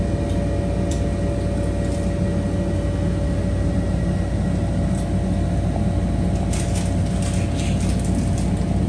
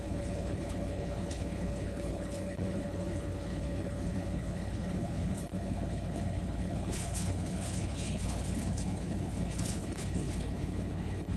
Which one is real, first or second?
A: first